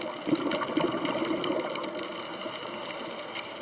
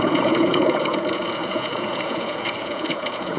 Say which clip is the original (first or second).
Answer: first